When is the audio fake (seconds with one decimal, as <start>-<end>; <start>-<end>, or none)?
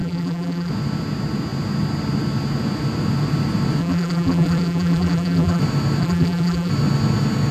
0.0-0.7; 3.8-5.6; 6.0-6.7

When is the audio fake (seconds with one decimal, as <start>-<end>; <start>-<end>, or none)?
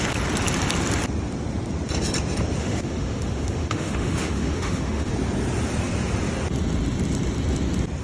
2.6-5.1